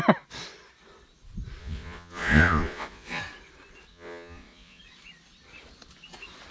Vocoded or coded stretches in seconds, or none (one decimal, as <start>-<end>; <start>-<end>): 1.6-3.2; 3.9-4.8